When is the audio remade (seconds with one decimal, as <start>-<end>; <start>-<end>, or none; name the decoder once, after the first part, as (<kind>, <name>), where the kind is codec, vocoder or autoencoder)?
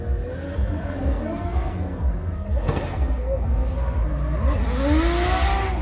0.5-4.0 (codec, SNAC)